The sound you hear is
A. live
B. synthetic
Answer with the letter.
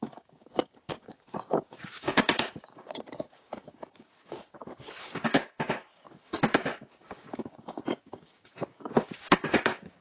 B